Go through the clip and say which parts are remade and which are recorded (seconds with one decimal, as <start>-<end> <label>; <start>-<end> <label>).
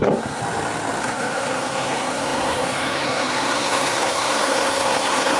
0.0-0.4 remade; 0.4-1.0 recorded; 1.0-5.4 remade